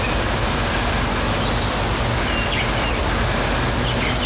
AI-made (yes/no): no